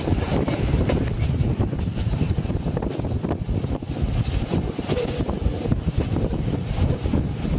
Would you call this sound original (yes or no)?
yes